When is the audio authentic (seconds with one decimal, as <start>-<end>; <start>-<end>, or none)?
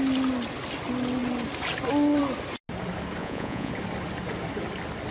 0.0-3.2; 3.7-5.1